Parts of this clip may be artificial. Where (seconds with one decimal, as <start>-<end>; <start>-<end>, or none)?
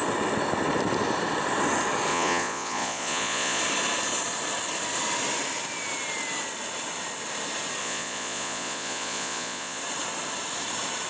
2.1-3.6; 7.8-9.8